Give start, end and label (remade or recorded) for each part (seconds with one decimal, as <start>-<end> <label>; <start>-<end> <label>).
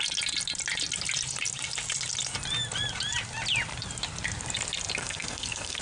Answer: 0.0-5.0 recorded; 5.0-5.8 remade